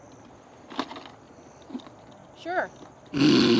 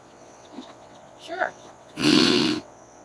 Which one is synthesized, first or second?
second